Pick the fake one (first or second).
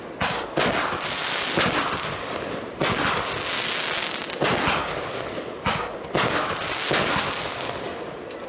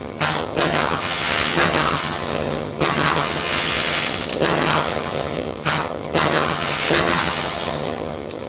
second